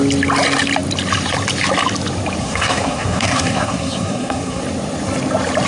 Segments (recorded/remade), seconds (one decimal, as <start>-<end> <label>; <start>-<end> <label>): 0.0-2.4 recorded; 2.4-4.6 remade; 4.6-5.7 recorded